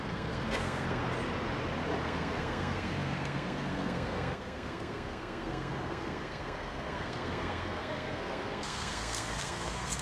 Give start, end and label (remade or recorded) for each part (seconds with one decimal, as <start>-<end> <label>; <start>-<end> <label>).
0.0-1.0 remade; 1.0-2.0 recorded; 2.0-10.0 remade